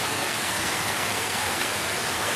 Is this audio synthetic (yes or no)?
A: yes